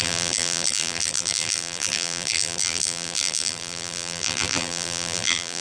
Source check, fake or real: fake